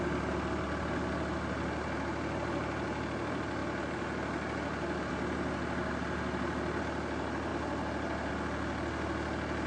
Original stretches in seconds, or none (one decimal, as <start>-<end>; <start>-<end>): 0.0-9.7